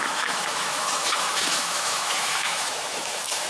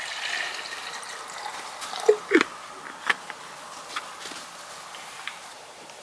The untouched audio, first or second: second